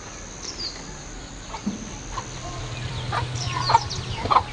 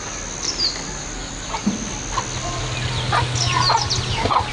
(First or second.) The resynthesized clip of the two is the first